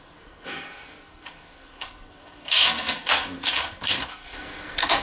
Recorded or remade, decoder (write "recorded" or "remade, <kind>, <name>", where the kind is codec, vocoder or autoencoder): remade, codec, SNAC